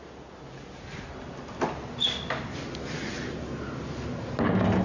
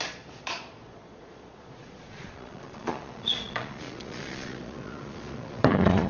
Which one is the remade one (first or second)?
second